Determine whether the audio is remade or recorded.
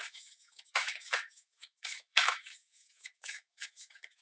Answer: remade